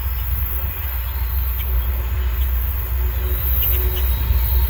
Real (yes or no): yes